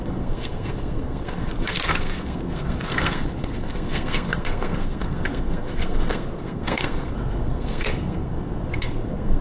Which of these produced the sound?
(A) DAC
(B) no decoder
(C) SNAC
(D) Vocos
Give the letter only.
C